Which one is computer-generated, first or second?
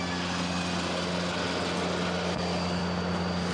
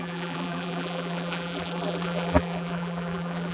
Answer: second